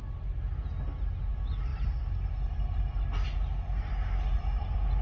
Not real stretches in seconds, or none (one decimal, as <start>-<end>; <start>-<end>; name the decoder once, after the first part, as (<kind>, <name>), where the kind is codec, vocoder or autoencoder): none